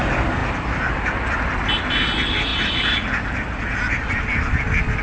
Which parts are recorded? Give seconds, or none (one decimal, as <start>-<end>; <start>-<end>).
0.0-5.0